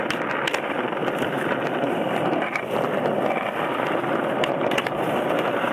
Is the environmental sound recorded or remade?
recorded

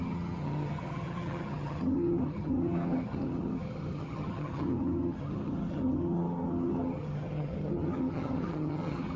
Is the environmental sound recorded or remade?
remade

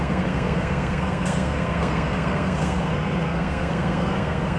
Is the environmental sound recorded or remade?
remade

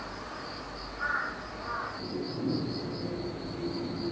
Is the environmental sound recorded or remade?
recorded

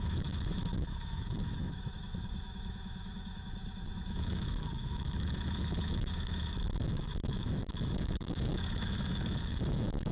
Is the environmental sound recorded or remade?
remade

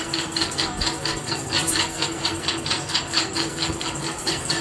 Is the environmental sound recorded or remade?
remade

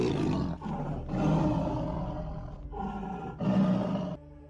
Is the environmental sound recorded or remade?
recorded